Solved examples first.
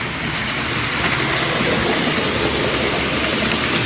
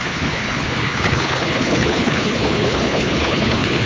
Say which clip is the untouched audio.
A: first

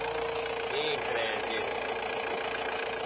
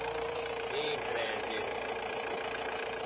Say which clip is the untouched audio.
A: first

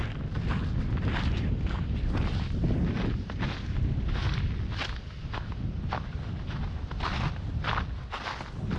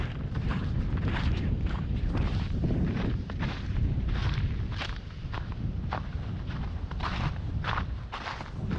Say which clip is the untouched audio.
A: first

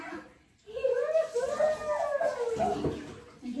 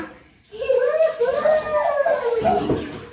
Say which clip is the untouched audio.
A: first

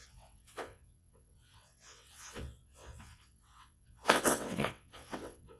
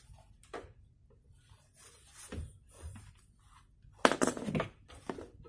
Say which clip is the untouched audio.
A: second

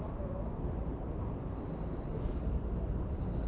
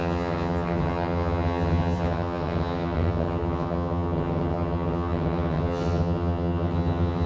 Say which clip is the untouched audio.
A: first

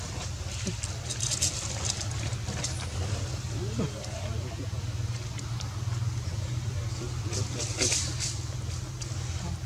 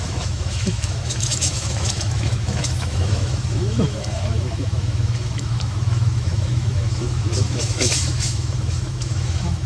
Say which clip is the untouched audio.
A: first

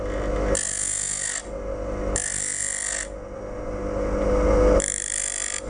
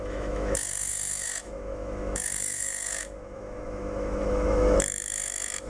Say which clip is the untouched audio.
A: first